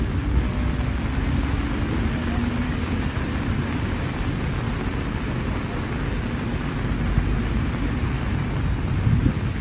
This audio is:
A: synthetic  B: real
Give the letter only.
B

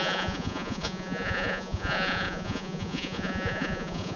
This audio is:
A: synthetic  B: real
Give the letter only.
A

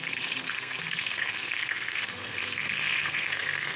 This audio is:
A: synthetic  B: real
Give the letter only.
A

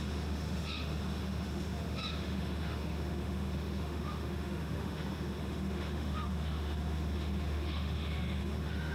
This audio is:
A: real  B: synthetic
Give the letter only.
B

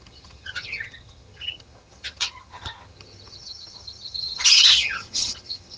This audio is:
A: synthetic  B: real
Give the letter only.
A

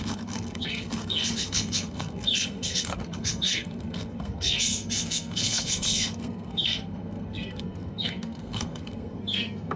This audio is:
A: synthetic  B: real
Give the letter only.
A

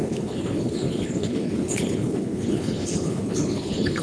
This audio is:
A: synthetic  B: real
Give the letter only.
A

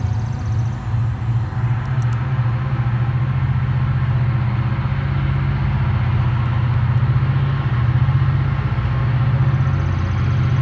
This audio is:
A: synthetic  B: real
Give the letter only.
B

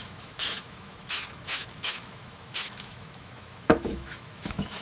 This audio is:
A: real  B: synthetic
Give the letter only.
B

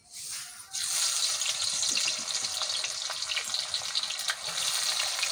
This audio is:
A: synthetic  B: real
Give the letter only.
B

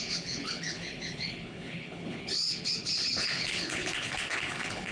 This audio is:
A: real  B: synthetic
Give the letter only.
B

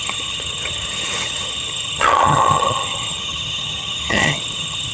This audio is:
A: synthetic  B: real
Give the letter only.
A